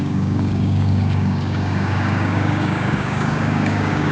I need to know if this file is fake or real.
fake